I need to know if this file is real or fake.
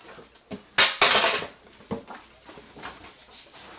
real